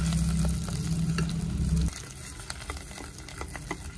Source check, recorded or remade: recorded